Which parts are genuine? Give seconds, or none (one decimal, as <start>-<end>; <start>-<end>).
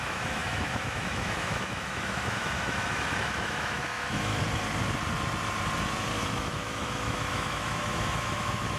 4.3-6.4